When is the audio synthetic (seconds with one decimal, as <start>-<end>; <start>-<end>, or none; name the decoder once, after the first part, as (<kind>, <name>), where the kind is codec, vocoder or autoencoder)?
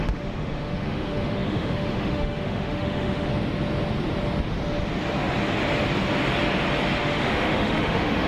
0.0-3.3 (autoencoder, DAC-VAE); 7.0-8.3